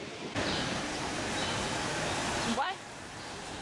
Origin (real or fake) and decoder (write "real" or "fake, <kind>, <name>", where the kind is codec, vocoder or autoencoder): fake, vocoder, BigVGAN v2